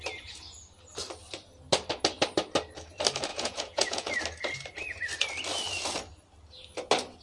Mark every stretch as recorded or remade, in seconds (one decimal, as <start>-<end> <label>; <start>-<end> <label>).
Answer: 0.0-3.3 recorded; 3.3-4.1 remade; 4.1-7.2 recorded